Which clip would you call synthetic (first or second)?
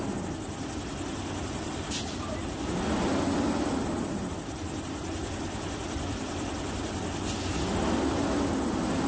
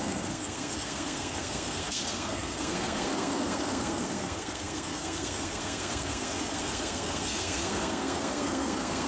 second